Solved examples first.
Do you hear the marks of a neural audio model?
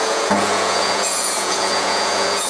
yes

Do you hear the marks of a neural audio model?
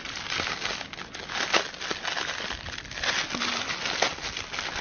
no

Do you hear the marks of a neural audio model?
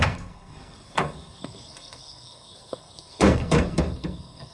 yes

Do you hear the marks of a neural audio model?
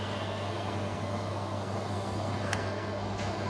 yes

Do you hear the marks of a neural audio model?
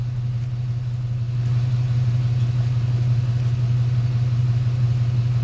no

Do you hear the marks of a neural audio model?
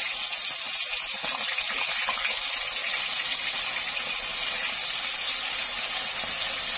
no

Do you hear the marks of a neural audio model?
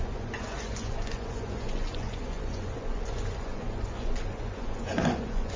yes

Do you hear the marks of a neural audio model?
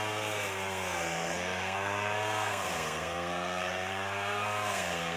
yes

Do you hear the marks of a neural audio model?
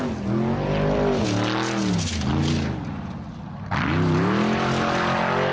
no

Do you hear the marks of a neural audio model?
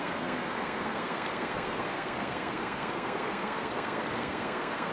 yes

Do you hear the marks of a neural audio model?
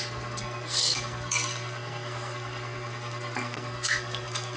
yes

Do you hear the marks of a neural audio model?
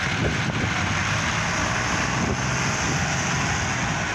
no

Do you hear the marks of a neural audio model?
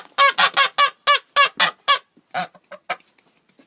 no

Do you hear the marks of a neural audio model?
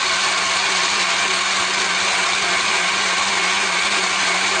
no